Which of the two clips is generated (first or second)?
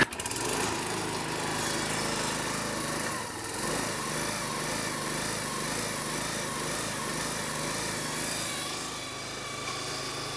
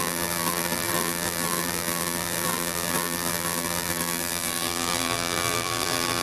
second